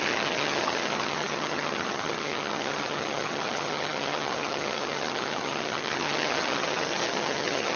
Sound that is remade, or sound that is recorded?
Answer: remade